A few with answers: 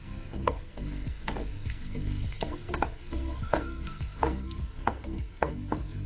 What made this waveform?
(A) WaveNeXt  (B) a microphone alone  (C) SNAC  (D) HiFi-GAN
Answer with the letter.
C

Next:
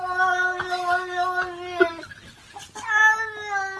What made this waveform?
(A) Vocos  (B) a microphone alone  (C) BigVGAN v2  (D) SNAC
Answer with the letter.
B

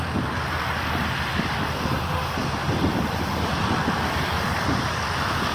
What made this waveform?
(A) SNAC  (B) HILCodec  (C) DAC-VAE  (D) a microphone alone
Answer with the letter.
D